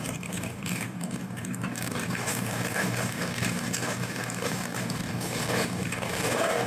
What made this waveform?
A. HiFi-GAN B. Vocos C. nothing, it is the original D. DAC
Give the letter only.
D